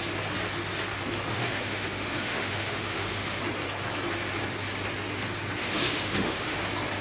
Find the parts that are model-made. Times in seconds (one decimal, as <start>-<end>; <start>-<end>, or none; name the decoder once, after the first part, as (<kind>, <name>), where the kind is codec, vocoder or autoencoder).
1.3-3.4 (autoencoder, DAC-VAE); 5.6-6.6